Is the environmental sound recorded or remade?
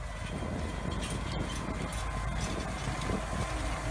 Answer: recorded